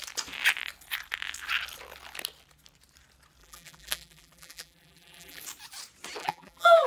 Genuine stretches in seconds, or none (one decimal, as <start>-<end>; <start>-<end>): 0.0-3.4; 5.4-6.2